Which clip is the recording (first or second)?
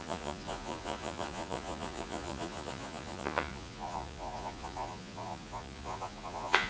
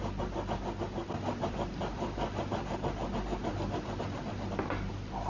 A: second